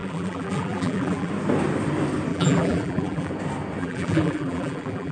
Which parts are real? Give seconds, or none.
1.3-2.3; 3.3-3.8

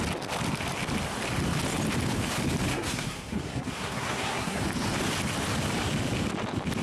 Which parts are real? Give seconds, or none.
0.0-2.7; 4.6-6.8

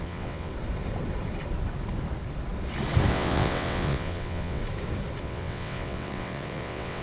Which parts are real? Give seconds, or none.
0.5-3.1; 4.6-5.2

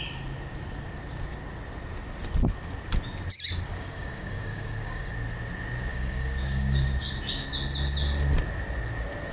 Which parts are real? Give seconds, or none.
0.0-3.7; 5.1-5.9; 7.1-9.3

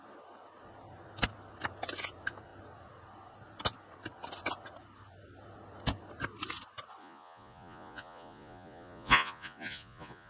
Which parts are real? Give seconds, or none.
0.0-7.0